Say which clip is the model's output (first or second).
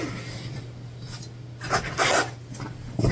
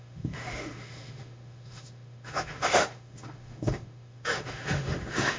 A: second